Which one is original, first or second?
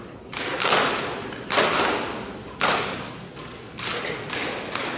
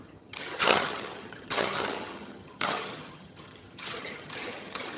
first